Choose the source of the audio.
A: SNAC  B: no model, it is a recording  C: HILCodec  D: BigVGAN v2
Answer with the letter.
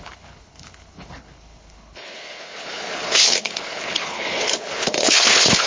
C